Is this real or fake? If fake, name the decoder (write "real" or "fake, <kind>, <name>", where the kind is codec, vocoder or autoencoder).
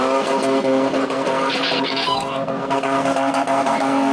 fake, codec, SNAC